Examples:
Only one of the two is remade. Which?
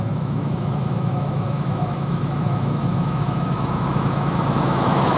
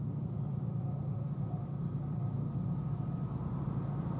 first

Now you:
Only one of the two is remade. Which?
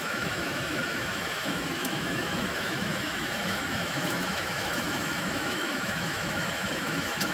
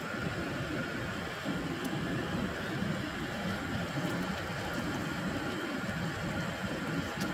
first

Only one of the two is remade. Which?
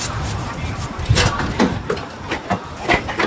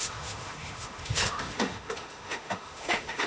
second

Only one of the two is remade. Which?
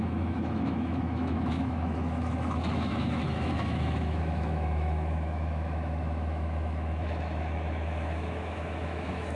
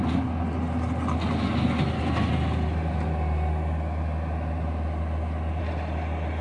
first